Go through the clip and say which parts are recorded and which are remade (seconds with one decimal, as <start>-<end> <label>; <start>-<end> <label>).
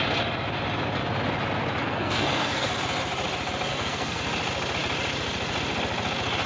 0.0-1.8 recorded; 1.8-2.7 remade; 2.7-3.7 recorded; 3.7-4.2 remade; 4.2-6.5 recorded